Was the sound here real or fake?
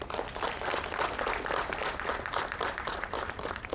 real